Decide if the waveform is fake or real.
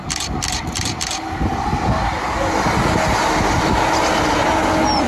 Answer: real